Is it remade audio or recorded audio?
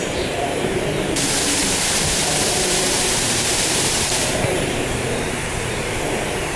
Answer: remade